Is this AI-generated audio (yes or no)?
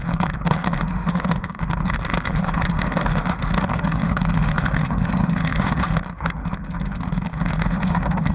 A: yes